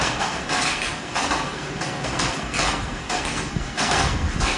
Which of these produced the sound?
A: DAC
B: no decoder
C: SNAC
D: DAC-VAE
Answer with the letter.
C